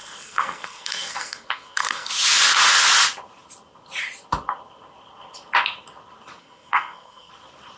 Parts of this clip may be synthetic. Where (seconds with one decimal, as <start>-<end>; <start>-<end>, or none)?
0.0-2.1; 6.4-7.3

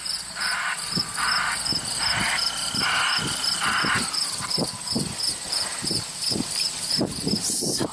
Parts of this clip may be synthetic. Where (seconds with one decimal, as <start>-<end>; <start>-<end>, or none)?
0.0-1.7; 5.3-7.9

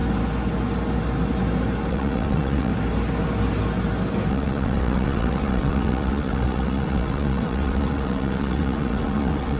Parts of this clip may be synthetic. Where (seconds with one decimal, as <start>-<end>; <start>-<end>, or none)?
1.9-2.7; 4.3-9.6